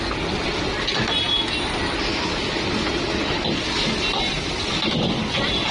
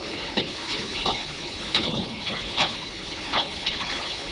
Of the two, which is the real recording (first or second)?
first